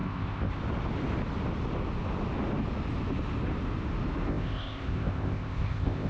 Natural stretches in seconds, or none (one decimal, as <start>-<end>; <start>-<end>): 0.5-4.3